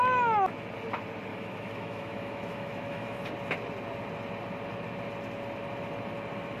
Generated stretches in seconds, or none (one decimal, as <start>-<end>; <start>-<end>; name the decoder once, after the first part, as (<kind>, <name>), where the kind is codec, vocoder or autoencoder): 1.3-3.3 (autoencoder, DAC-VAE)